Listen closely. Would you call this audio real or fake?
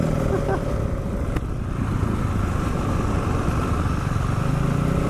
real